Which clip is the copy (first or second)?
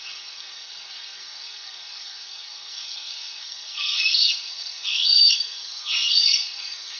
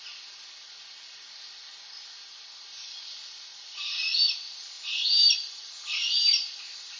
first